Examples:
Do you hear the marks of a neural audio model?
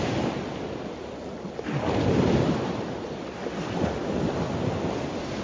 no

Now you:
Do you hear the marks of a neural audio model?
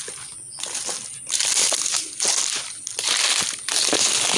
no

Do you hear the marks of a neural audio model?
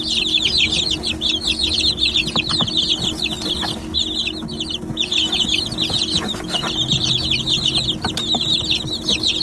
no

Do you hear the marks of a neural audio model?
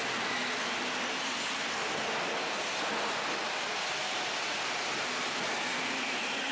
no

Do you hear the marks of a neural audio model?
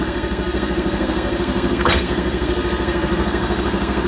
yes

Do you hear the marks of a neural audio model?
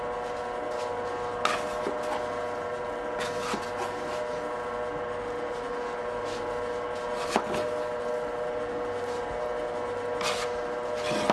no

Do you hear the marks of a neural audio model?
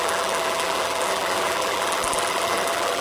yes